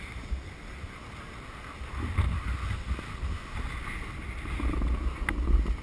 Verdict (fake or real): real